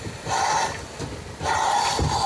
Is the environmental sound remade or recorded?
recorded